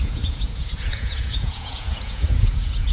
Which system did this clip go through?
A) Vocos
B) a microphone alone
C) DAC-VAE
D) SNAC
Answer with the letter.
A